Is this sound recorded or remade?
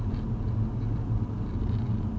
recorded